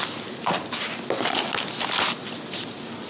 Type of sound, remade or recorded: recorded